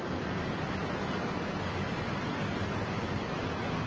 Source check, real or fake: real